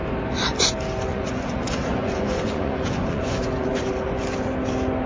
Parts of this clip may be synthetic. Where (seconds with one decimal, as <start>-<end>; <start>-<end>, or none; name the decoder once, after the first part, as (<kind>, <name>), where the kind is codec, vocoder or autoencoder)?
1.1-4.2 (vocoder, Vocos)